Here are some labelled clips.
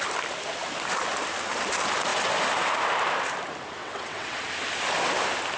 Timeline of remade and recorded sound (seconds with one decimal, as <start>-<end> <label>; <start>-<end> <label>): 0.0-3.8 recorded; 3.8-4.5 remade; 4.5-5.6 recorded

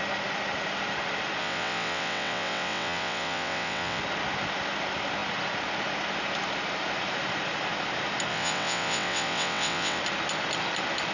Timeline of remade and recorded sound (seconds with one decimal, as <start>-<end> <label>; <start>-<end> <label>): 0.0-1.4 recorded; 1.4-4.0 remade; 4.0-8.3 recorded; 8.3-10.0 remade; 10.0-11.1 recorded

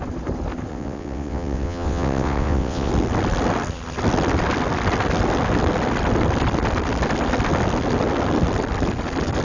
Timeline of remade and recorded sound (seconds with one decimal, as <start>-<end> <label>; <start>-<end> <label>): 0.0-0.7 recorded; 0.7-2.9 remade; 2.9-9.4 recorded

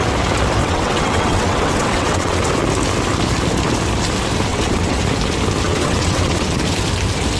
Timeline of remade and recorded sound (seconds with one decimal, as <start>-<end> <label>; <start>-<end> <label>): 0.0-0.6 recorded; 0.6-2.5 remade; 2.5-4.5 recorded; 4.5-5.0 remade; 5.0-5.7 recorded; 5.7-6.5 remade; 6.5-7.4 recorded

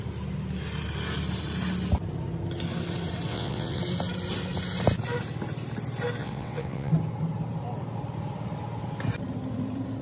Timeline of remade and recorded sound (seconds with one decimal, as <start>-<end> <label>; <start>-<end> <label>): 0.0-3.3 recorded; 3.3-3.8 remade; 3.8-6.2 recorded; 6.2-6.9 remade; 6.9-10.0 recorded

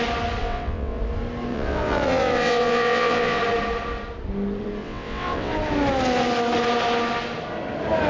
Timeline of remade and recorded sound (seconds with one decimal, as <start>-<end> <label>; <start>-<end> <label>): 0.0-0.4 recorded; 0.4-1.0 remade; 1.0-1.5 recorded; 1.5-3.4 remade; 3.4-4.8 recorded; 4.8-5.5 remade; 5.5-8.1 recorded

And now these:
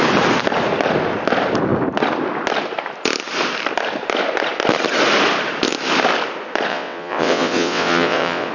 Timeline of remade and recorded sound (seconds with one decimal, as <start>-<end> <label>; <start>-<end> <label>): 0.0-6.7 recorded; 6.7-8.5 remade

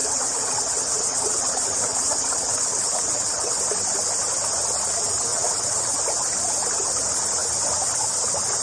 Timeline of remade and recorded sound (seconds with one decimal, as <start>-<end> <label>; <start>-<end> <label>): 0.0-3.6 remade; 3.6-5.3 recorded; 5.3-5.9 remade; 5.9-8.6 recorded